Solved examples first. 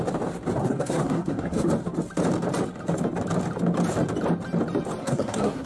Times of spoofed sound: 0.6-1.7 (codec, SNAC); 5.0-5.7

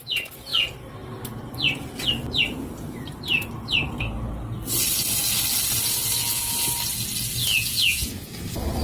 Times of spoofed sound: 6.2-6.7 (vocoder, Vocos); 7.4-8.3

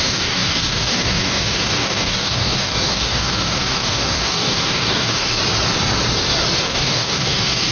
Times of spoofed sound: 0.0-5.4 (codec, DAC); 6.6-7.7

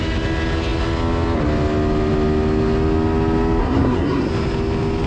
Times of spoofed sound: 3.6-4.3 (codec, SNAC)

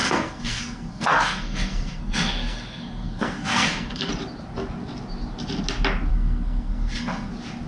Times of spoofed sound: 0.0-4.1 (codec, SNAC); 6.1-7.3